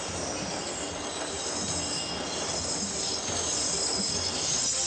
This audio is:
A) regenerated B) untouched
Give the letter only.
B